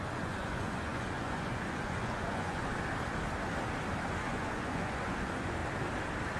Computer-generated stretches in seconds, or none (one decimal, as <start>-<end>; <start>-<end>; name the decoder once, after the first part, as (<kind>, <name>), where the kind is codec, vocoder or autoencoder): 0.0-2.7 (vocoder, Vocos); 4.1-5.6